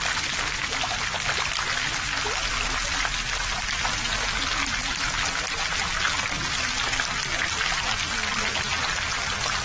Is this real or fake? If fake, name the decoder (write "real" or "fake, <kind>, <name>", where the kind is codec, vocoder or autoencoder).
real